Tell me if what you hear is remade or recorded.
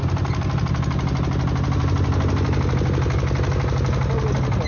recorded